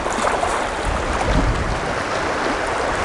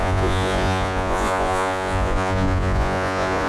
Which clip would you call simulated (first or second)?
second